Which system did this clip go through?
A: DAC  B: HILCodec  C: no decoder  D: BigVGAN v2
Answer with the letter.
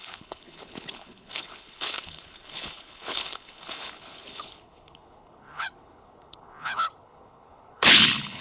B